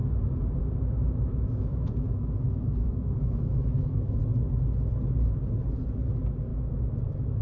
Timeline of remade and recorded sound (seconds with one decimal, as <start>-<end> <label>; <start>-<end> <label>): 0.0-1.0 recorded; 1.0-4.2 remade; 4.2-6.5 recorded; 6.5-7.0 remade; 7.0-7.4 recorded